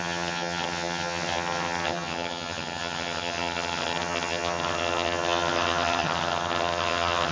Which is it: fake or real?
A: fake